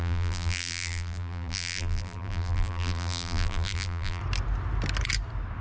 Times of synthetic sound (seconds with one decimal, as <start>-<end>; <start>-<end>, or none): 0.0-4.2